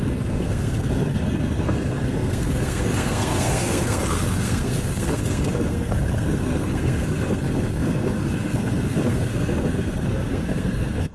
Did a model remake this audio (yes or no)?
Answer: yes